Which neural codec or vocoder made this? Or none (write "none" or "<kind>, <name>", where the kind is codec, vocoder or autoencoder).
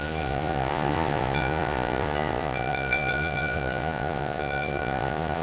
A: vocoder, Vocos